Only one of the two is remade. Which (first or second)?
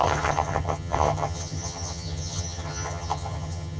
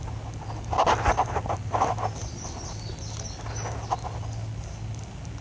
first